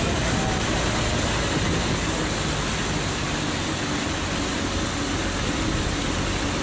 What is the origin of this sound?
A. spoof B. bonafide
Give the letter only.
B